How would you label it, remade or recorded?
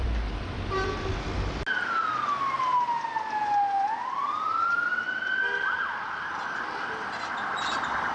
recorded